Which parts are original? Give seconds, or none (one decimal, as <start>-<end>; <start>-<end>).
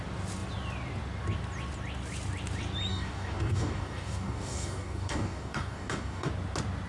0.0-2.9; 6.3-6.9